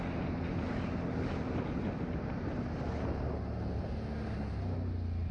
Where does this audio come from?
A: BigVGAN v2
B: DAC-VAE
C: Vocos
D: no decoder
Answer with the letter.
D